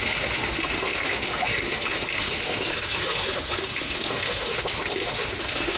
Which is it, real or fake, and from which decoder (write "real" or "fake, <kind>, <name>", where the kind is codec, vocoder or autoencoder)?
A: fake, autoencoder, DAC-VAE